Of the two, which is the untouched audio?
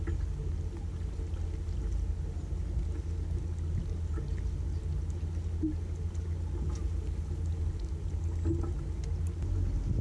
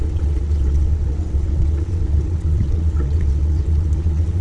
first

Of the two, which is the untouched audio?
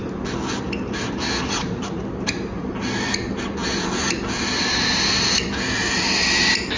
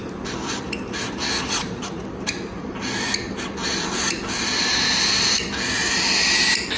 first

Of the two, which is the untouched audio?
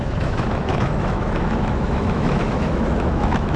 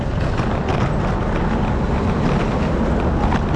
second